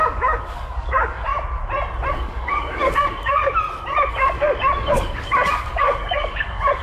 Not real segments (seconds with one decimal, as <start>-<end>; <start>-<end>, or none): 0.0-1.3; 2.1-3.4; 4.1-6.8